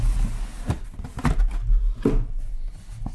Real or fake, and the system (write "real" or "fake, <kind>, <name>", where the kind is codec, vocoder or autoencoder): real